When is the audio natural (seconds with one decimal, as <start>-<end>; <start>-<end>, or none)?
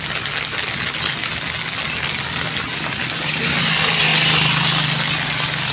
0.0-5.7